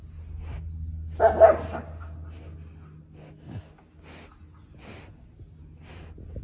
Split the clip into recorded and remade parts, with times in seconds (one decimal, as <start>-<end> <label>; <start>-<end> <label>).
0.0-6.4 recorded